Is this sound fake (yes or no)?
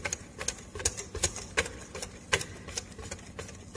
no